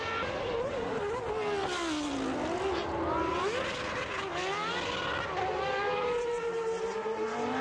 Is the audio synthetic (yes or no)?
no